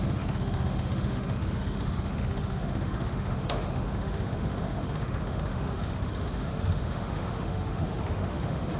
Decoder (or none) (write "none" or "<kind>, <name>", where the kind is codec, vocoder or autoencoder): autoencoder, DAC-VAE